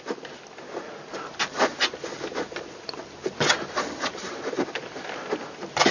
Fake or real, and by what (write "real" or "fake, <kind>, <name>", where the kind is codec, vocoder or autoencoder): real